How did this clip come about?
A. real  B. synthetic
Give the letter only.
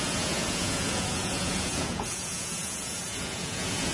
B